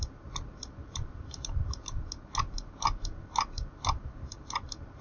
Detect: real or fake real